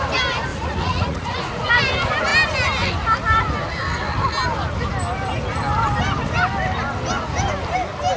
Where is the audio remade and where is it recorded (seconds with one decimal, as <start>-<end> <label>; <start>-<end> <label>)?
0.0-0.5 recorded; 0.5-1.7 remade; 1.7-8.2 recorded